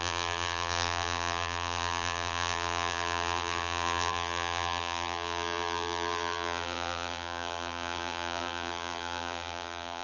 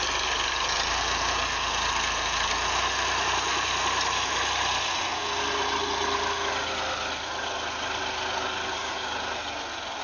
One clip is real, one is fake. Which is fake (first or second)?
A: first